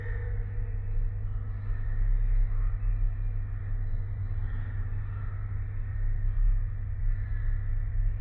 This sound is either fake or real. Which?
real